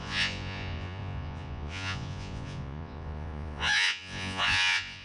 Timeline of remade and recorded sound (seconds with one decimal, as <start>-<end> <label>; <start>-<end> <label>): 0.0-5.0 remade